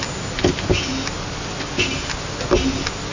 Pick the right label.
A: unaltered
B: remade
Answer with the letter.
A